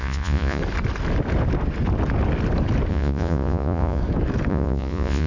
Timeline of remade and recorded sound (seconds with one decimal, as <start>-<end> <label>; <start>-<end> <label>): 0.0-0.6 remade; 0.6-2.9 recorded; 2.9-4.0 remade; 4.0-4.5 recorded; 4.5-5.3 remade

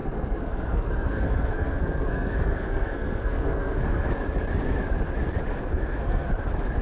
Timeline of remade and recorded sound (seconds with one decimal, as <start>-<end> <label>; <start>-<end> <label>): 0.0-4.1 remade; 4.1-5.5 recorded; 5.5-6.3 remade; 6.3-6.8 recorded

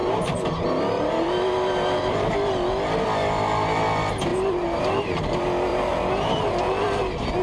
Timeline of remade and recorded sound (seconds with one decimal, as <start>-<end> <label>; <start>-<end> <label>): 0.0-2.3 remade; 2.3-4.3 recorded; 4.3-5.0 remade; 5.0-5.7 recorded; 5.7-7.4 remade

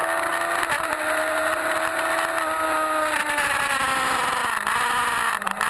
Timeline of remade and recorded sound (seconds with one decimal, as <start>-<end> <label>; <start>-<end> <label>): 0.0-0.6 recorded; 0.6-1.9 remade; 1.9-3.2 recorded; 3.2-4.4 remade; 4.4-5.0 recorded; 5.0-5.7 remade